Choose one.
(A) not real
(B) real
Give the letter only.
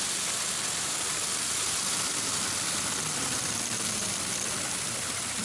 A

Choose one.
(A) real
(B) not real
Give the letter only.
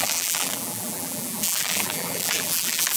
B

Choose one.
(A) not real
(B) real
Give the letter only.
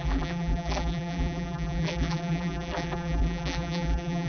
A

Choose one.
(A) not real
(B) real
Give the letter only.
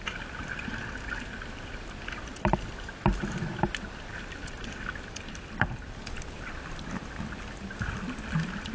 B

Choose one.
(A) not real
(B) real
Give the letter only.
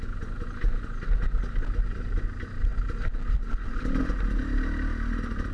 B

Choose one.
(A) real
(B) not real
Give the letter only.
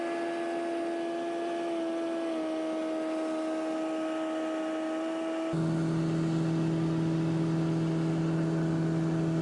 A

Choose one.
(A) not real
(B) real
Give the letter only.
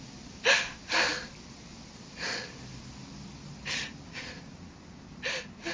B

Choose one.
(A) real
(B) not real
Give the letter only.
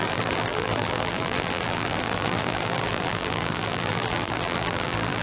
B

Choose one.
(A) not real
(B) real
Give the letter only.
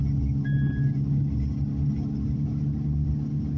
B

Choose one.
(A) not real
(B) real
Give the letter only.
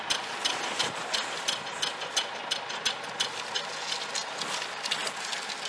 B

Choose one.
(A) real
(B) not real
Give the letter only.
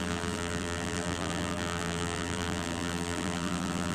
B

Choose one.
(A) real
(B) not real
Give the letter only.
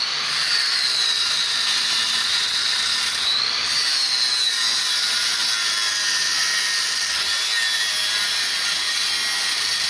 A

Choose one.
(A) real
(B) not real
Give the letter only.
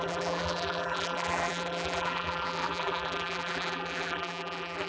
B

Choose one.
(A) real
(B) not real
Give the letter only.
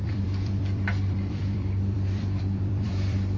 B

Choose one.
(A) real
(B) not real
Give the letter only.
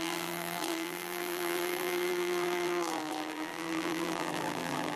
B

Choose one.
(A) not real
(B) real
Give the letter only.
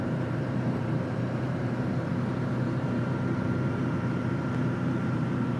A